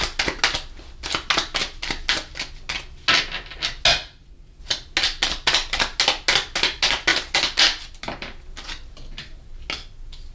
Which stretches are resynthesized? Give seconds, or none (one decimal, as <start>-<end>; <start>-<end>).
3.9-4.6